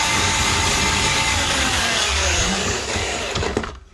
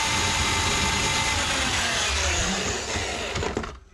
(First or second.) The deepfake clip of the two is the first